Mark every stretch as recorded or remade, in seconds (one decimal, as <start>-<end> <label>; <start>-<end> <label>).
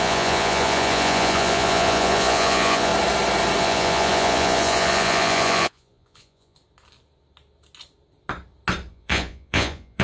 0.0-2.9 remade; 2.9-3.6 recorded; 3.6-6.6 remade; 6.6-8.9 recorded; 8.9-10.0 remade